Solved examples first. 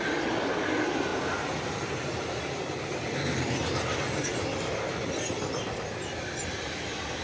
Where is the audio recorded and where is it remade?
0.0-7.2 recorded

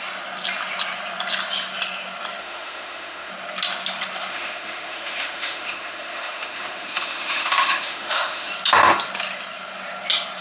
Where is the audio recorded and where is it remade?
0.0-2.4 recorded; 2.4-3.3 remade; 3.3-4.3 recorded; 4.3-8.5 remade; 8.5-10.4 recorded